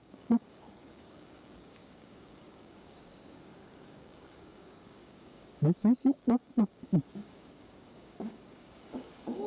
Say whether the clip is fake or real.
fake